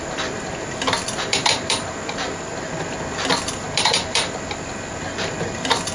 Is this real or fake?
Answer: fake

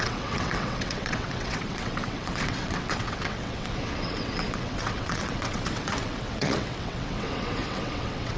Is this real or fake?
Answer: fake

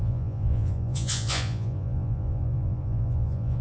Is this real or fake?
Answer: fake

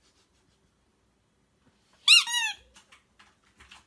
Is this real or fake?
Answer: real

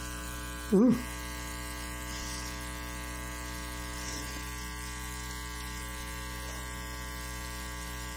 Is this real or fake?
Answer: real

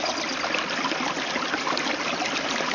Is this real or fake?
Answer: real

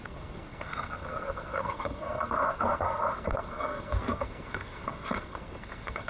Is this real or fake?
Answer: fake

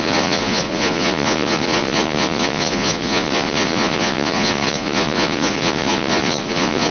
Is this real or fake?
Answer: fake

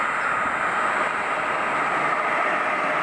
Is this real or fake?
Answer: real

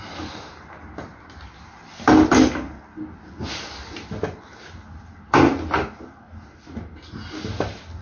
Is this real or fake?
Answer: real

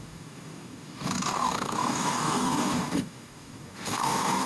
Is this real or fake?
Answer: fake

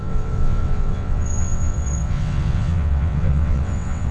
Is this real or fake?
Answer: fake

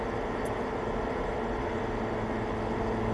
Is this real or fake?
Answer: real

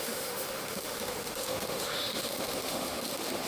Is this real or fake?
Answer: fake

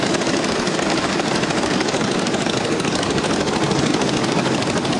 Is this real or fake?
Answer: fake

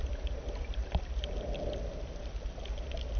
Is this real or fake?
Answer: real